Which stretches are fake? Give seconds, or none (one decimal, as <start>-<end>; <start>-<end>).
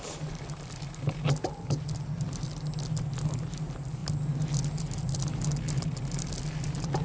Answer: none